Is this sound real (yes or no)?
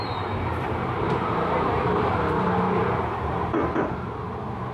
no